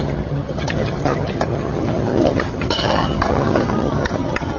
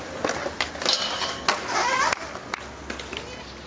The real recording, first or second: second